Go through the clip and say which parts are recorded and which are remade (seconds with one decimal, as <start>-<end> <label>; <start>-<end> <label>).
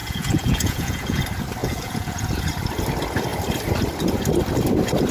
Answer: 0.0-1.2 remade; 1.2-1.6 recorded; 1.6-2.4 remade; 2.4-5.1 recorded